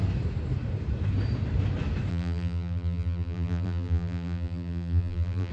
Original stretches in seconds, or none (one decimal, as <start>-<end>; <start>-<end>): 0.0-2.1